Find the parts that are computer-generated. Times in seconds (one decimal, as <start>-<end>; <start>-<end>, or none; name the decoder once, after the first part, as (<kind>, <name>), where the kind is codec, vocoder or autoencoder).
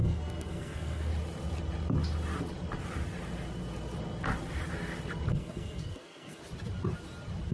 0.0-1.1 (codec, SNAC); 5.3-6.4